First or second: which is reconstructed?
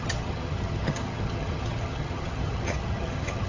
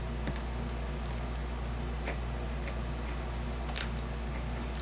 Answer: first